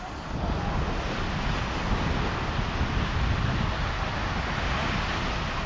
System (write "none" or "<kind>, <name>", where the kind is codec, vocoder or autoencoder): none